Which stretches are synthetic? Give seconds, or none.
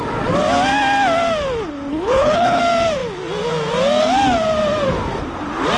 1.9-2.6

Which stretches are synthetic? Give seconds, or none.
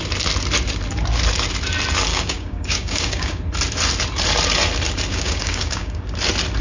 2.1-3.4; 5.1-6.0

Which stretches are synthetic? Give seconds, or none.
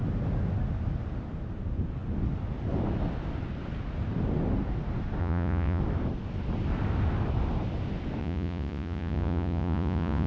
5.2-5.8; 8.2-10.3